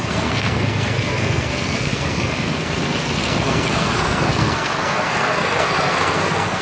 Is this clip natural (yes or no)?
no